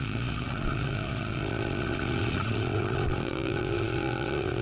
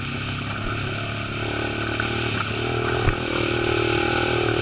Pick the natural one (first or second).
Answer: second